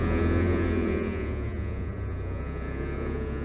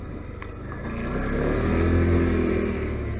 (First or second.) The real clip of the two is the second